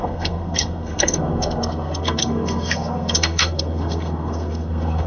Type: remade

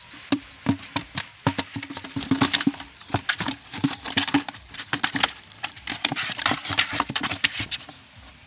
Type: remade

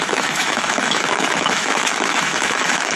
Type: remade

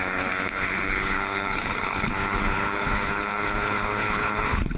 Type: remade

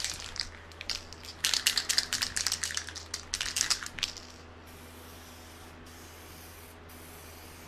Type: recorded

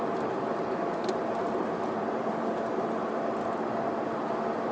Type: recorded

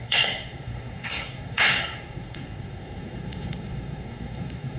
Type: remade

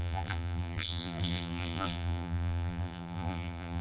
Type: remade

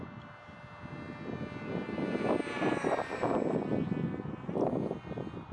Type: recorded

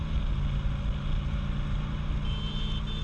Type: recorded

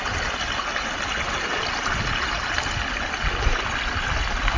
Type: recorded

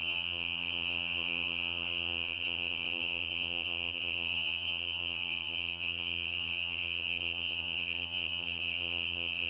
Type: remade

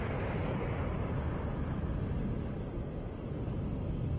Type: recorded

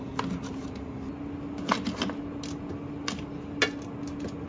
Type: recorded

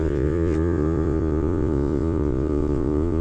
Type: remade